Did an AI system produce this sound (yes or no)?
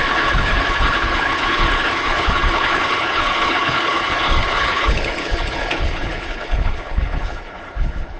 yes